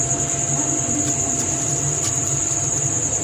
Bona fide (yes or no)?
no